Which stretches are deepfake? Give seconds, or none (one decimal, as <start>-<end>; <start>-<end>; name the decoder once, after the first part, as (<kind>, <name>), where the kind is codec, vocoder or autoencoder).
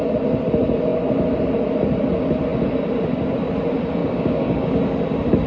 4.0-4.7 (codec, DAC)